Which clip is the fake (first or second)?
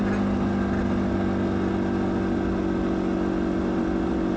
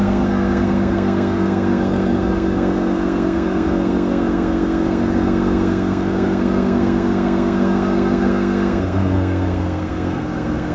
second